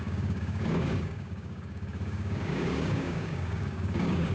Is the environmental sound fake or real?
fake